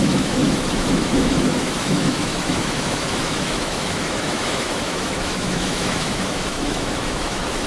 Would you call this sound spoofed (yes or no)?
yes